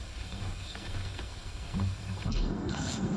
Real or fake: fake